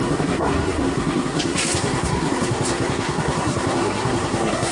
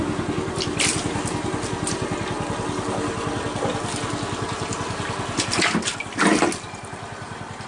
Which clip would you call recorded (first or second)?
second